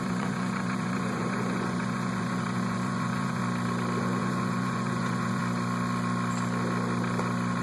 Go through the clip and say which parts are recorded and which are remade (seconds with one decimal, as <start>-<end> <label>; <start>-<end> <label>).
0.0-3.4 remade; 3.4-4.0 recorded; 4.0-5.4 remade; 5.4-7.6 recorded

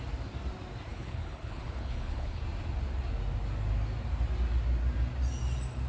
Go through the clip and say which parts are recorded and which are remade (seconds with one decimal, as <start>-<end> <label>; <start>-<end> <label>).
0.0-0.9 recorded; 0.9-2.4 remade; 2.4-5.9 recorded

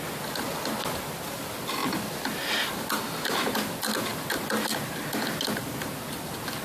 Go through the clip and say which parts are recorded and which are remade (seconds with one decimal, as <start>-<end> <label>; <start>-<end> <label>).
0.0-1.8 recorded; 1.8-2.7 remade; 2.7-5.6 recorded; 5.6-6.6 remade

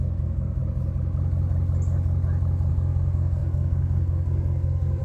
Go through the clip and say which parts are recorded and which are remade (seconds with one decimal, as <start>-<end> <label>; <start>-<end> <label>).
0.0-0.6 remade; 0.6-2.7 recorded; 2.7-5.0 remade

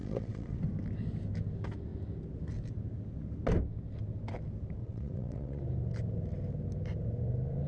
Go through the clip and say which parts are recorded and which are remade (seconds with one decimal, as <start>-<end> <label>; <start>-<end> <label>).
0.0-0.6 remade; 0.6-4.8 recorded; 4.8-5.6 remade; 5.6-7.7 recorded

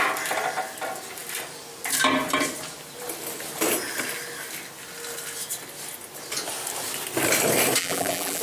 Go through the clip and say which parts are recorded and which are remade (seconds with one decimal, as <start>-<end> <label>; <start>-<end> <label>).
0.0-7.8 recorded; 7.8-8.4 remade

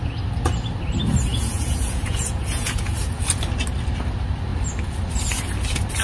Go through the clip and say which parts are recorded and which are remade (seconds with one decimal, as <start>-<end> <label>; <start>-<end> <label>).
0.0-1.3 recorded; 1.3-2.9 remade; 2.9-6.0 recorded